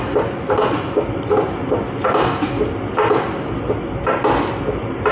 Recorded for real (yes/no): yes